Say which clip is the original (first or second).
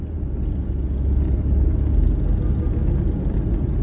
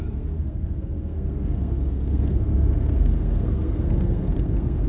first